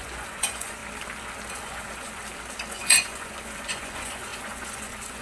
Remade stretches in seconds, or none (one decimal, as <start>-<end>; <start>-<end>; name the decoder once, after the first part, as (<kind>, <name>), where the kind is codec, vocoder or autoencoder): 0.0-0.8 (vocoder, Vocos); 1.5-2.2; 2.7-5.2